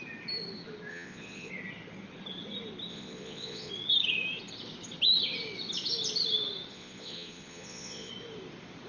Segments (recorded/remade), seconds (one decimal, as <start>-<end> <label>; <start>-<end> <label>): 0.0-0.9 recorded; 0.9-1.5 remade; 1.5-2.9 recorded; 2.9-3.7 remade; 3.7-6.7 recorded; 6.7-8.1 remade; 8.1-8.9 recorded